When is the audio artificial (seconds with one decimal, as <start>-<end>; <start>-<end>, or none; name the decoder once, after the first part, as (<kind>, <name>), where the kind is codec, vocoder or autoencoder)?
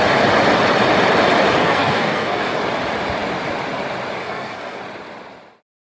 1.6-2.6 (codec, SNAC); 4.2-4.8